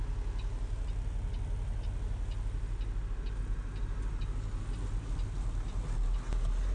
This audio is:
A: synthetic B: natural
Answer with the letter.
B